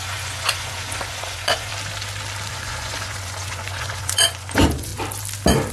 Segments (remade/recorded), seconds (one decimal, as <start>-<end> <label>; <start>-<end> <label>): 0.0-1.7 remade; 1.7-2.5 recorded; 2.5-4.9 remade; 4.9-5.7 recorded